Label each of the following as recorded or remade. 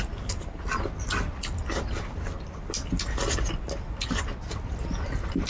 recorded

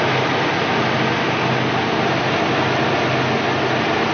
recorded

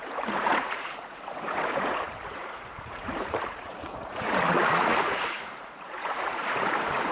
remade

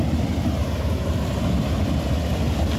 recorded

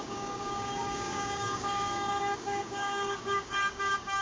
remade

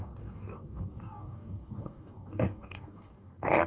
remade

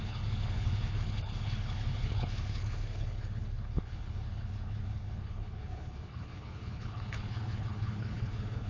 remade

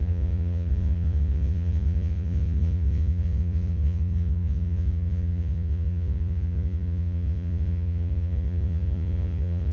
remade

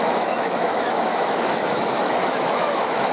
remade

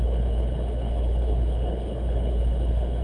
remade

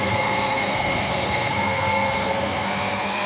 remade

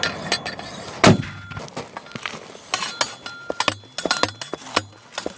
recorded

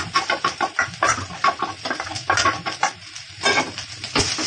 recorded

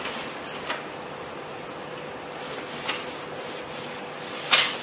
recorded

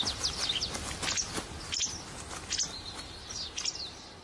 recorded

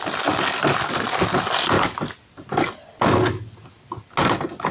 recorded